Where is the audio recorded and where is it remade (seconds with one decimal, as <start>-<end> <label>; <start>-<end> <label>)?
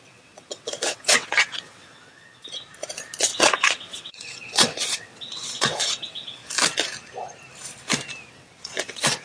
0.0-2.4 remade; 2.4-3.2 recorded; 3.2-6.4 remade; 6.4-8.3 recorded; 8.3-9.2 remade